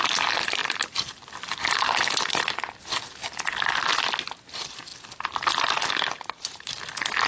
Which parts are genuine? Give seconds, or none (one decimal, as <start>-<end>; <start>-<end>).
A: 0.0-7.3